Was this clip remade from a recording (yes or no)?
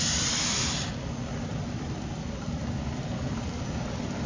yes